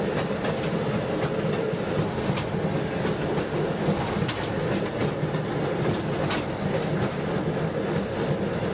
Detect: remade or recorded recorded